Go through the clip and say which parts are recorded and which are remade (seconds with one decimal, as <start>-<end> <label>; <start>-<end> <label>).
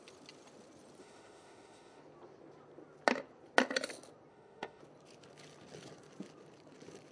0.0-1.0 recorded; 1.0-2.0 remade; 2.0-4.3 recorded; 4.3-4.8 remade; 4.8-7.1 recorded